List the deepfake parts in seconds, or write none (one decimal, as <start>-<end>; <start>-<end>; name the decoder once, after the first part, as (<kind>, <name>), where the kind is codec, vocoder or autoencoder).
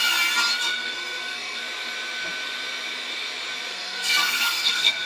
0.6-1.6 (codec, SNAC); 3.7-5.1